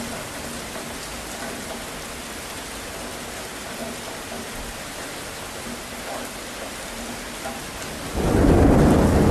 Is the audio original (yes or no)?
yes